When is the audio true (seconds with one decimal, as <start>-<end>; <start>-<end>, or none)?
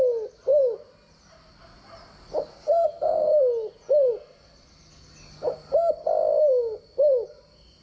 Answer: 0.0-2.5; 3.3-7.8